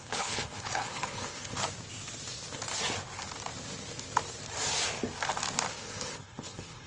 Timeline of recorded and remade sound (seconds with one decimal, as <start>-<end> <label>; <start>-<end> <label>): 0.0-1.6 remade; 1.6-5.7 recorded; 5.7-6.9 remade